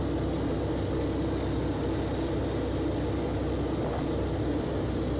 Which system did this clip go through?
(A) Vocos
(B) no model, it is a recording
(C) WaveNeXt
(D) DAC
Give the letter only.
B